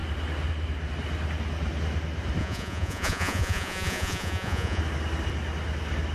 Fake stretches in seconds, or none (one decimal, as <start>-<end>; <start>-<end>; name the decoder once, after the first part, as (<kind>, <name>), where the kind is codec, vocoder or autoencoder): 2.4-4.8 (vocoder, Vocos)